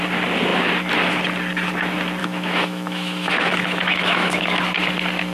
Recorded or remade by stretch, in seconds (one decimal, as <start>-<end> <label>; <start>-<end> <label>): 0.0-2.2 recorded; 2.2-4.4 remade; 4.4-5.3 recorded